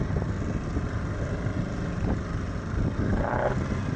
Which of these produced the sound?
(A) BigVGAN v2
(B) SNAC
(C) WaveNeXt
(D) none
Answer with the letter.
D